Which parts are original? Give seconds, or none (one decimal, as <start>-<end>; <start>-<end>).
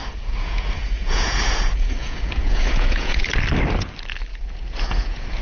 3.2-4.3